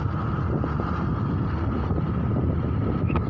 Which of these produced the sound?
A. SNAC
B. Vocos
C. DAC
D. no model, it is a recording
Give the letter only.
D